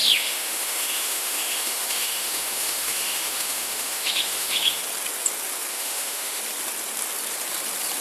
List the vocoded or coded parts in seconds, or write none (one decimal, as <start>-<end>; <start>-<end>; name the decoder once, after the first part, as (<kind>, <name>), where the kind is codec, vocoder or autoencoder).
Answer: 0.0-4.8 (autoencoder, DAC-VAE); 5.7-6.4